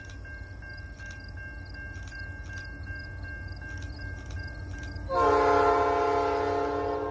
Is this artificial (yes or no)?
no